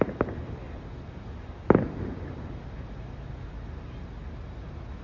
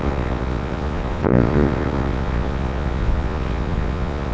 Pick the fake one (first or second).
second